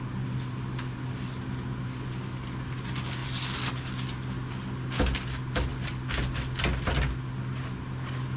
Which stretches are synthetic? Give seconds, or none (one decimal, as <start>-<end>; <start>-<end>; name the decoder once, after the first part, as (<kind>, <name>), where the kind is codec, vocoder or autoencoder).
none